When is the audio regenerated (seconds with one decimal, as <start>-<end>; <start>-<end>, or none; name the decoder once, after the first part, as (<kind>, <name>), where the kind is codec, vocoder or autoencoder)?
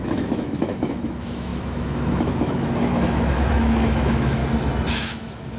0.0-4.4 (autoencoder, DAC-VAE); 4.9-5.6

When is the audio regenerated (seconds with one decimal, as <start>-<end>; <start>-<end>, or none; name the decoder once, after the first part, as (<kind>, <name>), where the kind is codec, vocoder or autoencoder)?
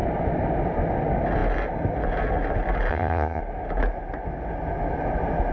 2.9-3.4 (vocoder, HiFi-GAN)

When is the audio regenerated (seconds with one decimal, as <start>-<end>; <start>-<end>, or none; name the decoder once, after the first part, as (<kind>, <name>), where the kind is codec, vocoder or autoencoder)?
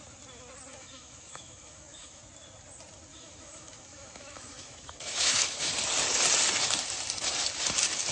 0.7-2.2 (autoencoder, DAC-VAE); 3.1-5.7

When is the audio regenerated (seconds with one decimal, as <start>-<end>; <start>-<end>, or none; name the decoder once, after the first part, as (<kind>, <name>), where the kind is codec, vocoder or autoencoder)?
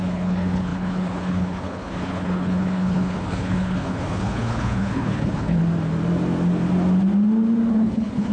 0.0-5.6 (codec, HILCodec); 7.7-8.3